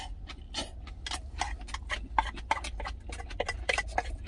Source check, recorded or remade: recorded